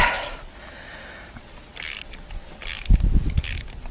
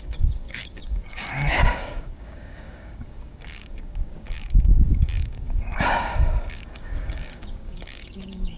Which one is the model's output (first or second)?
second